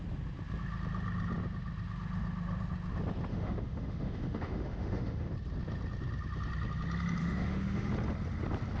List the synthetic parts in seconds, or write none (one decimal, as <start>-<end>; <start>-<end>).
3.3-5.3; 7.2-7.9